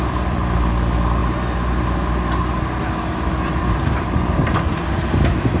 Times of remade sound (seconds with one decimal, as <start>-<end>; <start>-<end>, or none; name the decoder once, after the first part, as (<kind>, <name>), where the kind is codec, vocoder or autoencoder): 0.0-1.2 (vocoder, BigVGAN v2); 3.3-5.6